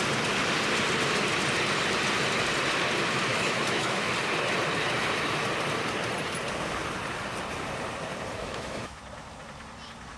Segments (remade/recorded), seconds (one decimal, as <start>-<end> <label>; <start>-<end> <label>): 0.0-3.3 recorded; 3.3-4.1 remade; 4.1-8.4 recorded; 8.4-9.0 remade; 9.0-10.2 recorded